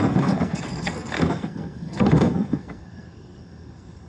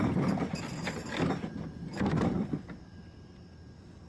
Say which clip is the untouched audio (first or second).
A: second